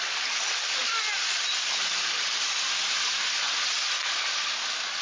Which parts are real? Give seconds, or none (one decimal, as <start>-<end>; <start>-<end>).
0.0-5.0